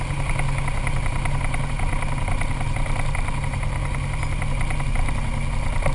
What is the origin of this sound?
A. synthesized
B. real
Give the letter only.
B